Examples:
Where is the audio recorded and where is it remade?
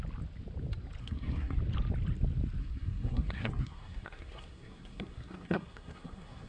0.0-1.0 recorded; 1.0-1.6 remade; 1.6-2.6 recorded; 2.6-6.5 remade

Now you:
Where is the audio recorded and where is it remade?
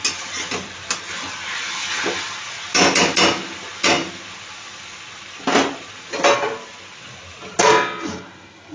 0.0-8.7 recorded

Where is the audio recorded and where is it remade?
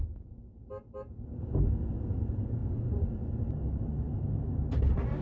0.0-5.2 recorded